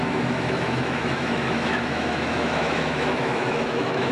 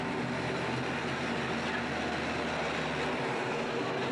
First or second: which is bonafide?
second